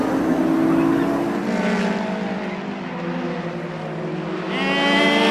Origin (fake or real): real